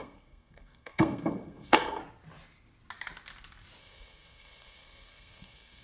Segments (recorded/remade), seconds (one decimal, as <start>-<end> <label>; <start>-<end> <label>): 0.0-2.0 remade; 2.0-3.8 recorded; 3.8-5.8 remade